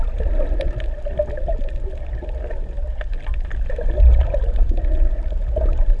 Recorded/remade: recorded